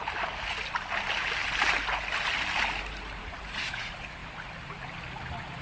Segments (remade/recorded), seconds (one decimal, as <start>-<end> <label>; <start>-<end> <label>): 0.0-5.6 recorded